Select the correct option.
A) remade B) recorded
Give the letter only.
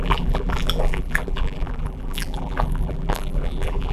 A